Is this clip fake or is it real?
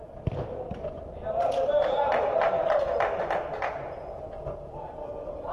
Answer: real